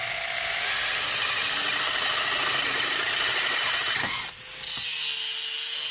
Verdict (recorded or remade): recorded